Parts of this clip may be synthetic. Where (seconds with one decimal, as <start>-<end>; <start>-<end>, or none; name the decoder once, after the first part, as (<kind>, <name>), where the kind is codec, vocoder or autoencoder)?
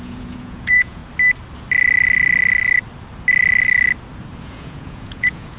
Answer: 0.0-1.0 (vocoder, Vocos); 4.4-5.6